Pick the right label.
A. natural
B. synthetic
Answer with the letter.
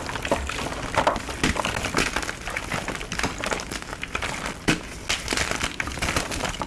A